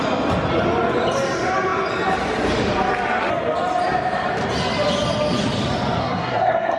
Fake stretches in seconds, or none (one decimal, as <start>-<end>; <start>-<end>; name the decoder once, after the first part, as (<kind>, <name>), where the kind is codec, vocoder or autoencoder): 6.0-6.8 (codec, SNAC)